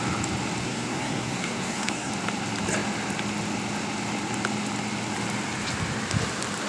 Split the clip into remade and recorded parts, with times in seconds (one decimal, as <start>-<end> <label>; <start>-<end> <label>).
0.0-0.6 recorded; 0.6-2.1 remade; 2.1-6.7 recorded